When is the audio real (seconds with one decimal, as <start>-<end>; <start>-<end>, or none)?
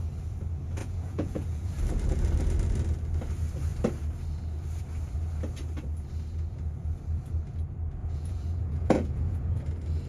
0.0-0.8; 1.7-8.0; 9.5-10.1